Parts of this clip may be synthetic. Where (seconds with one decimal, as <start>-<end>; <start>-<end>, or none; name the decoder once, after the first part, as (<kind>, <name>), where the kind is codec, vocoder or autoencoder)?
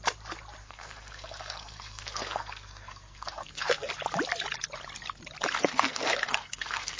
0.6-3.9 (codec, SNAC); 5.6-7.0